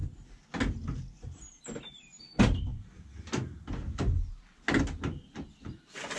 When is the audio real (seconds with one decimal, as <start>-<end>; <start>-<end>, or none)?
0.0-6.2